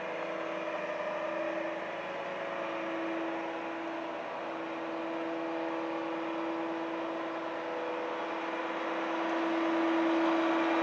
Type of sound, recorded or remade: recorded